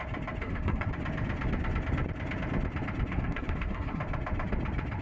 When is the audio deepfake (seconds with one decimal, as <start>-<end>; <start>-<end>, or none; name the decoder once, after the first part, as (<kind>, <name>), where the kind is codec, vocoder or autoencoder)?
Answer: 0.4-0.9 (codec, SNAC); 3.1-4.0